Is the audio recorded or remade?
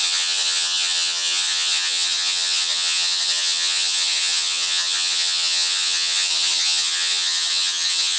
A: remade